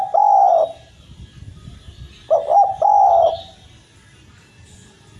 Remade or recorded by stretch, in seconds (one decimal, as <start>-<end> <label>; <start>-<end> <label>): 0.0-5.2 recorded